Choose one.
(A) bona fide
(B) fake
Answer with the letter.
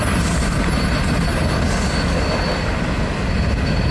A